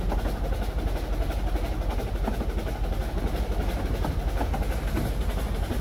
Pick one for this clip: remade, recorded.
recorded